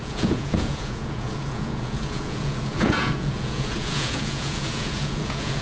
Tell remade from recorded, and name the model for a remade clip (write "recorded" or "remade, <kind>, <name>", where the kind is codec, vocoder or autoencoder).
remade, vocoder, Vocos